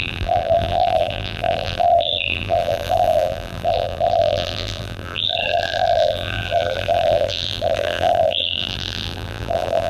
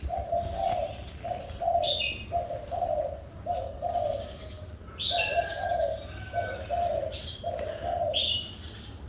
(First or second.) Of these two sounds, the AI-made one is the first